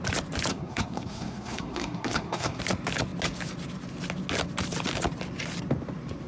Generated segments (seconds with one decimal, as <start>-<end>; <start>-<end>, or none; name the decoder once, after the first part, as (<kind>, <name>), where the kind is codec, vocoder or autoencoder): 0.5-2.6 (codec, SNAC)